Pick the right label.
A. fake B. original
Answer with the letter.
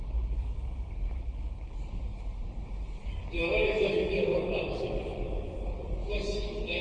A